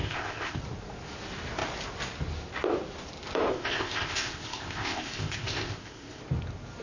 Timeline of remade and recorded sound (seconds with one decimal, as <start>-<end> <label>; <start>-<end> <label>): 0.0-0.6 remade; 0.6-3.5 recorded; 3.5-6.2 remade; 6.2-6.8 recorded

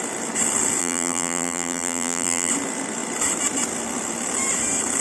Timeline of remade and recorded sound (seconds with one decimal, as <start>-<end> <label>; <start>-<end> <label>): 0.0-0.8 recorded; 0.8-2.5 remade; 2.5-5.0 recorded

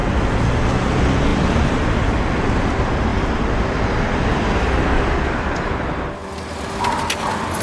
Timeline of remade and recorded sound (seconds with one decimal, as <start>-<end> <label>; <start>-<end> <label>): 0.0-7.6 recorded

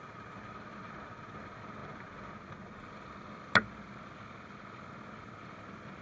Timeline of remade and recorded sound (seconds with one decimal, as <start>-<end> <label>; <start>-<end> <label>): 0.0-6.0 recorded

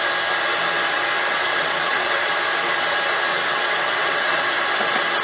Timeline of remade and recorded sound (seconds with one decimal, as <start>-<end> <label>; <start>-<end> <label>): 0.0-1.3 recorded; 1.3-2.3 remade; 2.3-3.3 recorded; 3.3-4.6 remade; 4.6-5.2 recorded